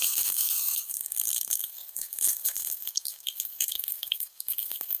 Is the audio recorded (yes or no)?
no